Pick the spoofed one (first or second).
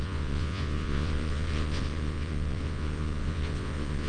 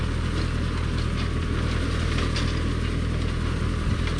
first